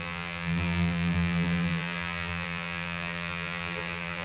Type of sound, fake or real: fake